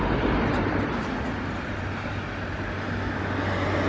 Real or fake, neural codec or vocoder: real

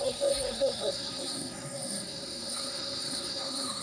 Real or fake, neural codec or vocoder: fake, codec, SNAC